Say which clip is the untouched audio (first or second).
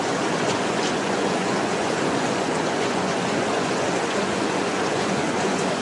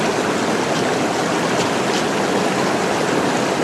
second